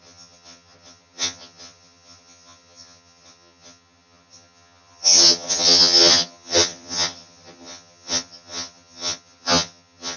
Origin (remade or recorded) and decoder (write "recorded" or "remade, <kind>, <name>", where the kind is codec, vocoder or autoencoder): remade, vocoder, HiFi-GAN